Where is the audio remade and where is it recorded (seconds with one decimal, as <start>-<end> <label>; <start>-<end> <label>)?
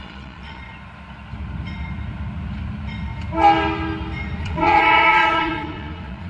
0.0-0.6 remade; 0.6-4.4 recorded; 4.4-6.3 remade